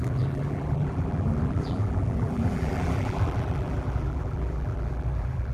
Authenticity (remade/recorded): remade